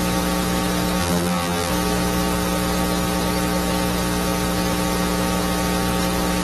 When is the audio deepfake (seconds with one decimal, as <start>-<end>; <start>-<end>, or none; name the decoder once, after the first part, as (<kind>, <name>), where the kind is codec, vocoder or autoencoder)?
1.0-1.7 (vocoder, BigVGAN v2)